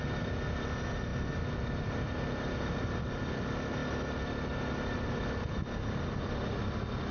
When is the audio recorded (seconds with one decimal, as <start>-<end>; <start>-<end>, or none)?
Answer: 0.0-7.1